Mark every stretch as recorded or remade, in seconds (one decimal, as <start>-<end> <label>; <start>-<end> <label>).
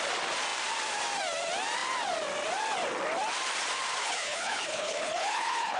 0.0-4.0 recorded; 4.0-5.8 remade